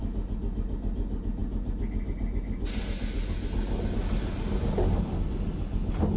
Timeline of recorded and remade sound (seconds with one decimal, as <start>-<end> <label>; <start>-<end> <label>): 0.0-6.2 recorded